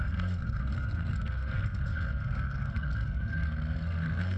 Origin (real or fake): fake